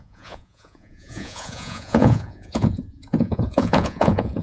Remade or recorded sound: remade